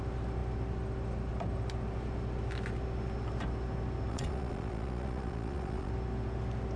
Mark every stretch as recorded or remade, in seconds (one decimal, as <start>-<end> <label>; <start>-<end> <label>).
0.0-4.1 recorded; 4.1-5.9 remade; 5.9-6.8 recorded